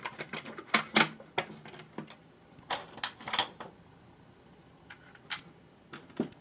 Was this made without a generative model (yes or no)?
yes